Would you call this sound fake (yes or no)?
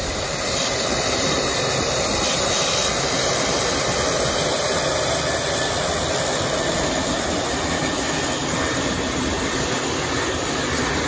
no